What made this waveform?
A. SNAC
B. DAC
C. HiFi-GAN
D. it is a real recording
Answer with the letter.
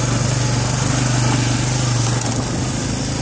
D